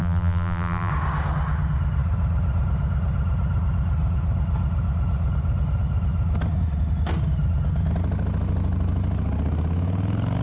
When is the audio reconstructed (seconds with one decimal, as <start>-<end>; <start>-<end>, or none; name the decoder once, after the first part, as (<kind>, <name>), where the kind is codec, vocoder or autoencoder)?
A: 0.0-0.9 (vocoder, BigVGAN v2)